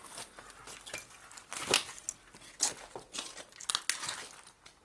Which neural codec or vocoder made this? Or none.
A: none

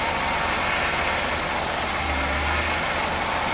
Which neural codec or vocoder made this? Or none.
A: none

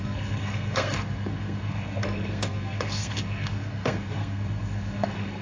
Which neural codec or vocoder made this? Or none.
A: codec, SNAC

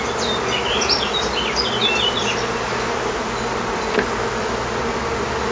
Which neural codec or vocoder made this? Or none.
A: none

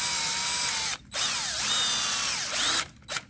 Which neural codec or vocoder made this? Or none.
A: none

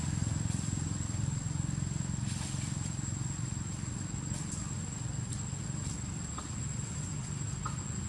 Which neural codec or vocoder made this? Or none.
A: none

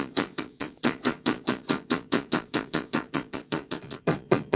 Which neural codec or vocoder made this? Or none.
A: vocoder, Vocos